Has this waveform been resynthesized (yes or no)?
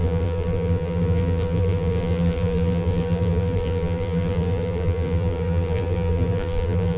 yes